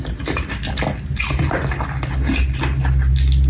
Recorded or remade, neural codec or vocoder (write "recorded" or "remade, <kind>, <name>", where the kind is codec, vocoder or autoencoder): recorded